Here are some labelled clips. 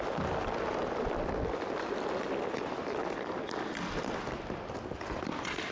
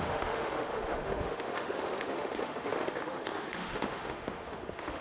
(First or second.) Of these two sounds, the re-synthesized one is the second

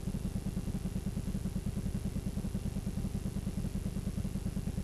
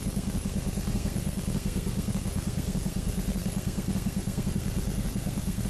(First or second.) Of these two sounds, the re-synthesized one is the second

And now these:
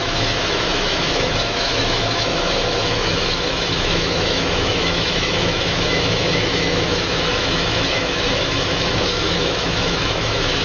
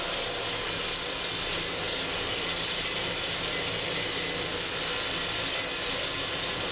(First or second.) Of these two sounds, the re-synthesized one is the first